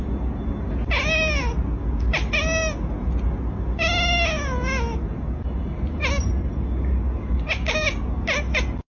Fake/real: real